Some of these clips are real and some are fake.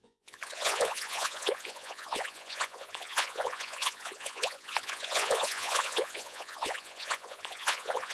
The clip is fake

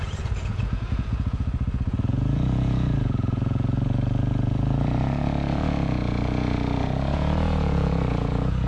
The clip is fake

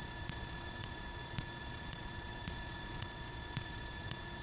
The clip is fake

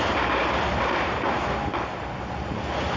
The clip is real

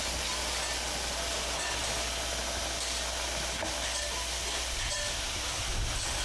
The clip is real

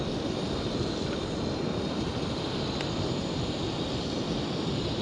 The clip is real